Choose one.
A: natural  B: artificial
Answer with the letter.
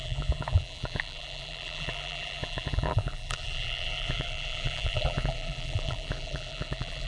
B